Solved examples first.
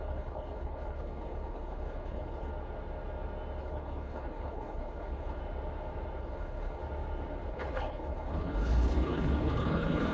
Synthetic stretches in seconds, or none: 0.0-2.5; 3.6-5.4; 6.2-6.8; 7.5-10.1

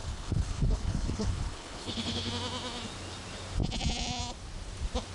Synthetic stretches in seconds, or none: 0.0-2.3

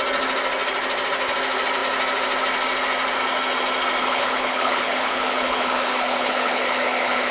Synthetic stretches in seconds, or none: 4.0-7.3

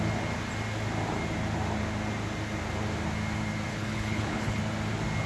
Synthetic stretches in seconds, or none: 3.7-4.6

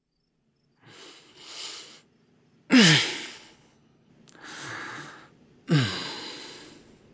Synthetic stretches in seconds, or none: 1.3-1.8; 3.1-4.1